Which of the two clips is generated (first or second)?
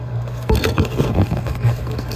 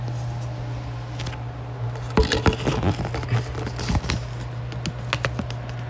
first